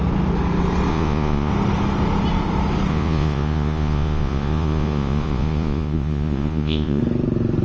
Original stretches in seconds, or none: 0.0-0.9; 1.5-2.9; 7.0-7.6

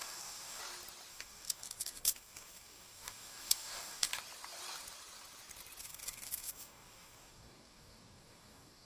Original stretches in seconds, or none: 0.6-1.1; 4.1-5.8